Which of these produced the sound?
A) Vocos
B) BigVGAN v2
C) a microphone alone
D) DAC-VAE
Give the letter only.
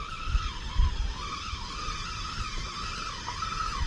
C